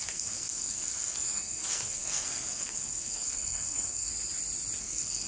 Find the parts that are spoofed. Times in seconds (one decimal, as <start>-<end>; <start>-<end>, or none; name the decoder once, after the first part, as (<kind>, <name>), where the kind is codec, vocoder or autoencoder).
0.0-4.1 (codec, SNAC); 4.8-5.3